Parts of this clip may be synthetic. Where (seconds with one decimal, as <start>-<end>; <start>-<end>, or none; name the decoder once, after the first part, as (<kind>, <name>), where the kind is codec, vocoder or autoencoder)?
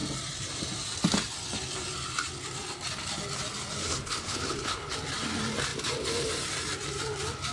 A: 3.8-4.9 (codec, HILCodec)